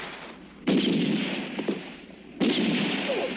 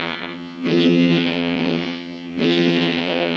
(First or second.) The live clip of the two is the first